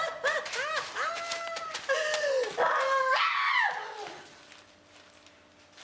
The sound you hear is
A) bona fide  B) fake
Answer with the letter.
A